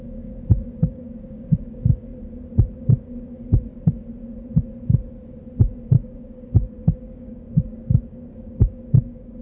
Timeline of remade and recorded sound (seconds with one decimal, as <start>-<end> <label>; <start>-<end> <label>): 0.0-2.1 remade; 2.1-2.8 recorded; 2.8-3.7 remade; 3.7-5.8 recorded; 5.8-9.4 remade